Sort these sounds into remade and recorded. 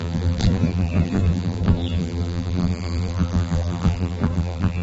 remade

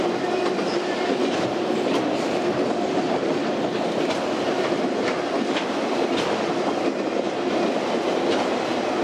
remade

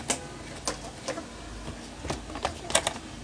recorded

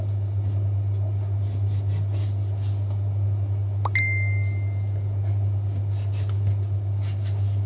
recorded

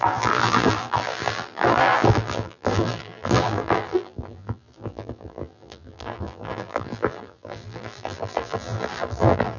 remade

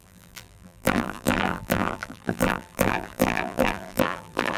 remade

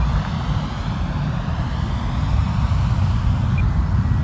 recorded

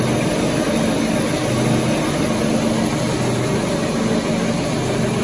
recorded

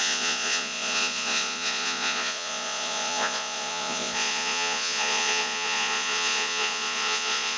remade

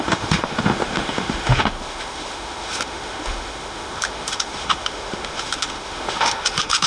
remade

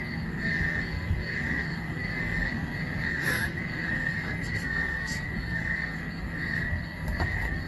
remade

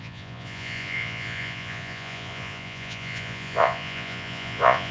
remade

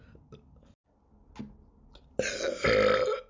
recorded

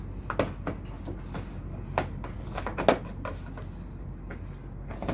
recorded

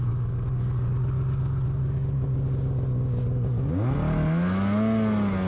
recorded